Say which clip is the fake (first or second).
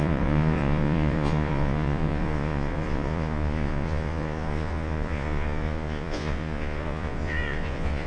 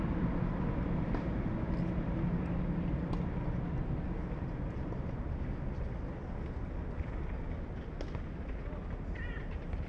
first